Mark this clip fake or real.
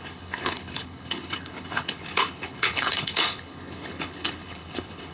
fake